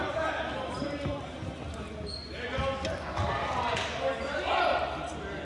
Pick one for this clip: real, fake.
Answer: real